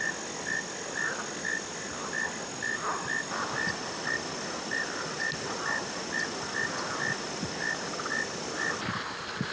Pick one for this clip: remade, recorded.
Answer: recorded